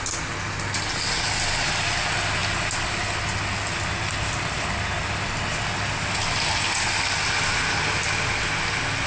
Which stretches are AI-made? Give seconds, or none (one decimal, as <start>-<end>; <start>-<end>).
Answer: none